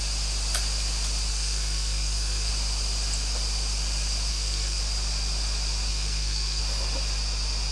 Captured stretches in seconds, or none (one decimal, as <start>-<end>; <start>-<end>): 0.0-1.3; 2.5-4.3; 4.8-5.9; 6.6-7.7